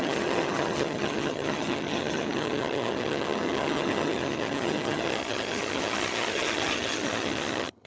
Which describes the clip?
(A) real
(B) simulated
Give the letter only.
B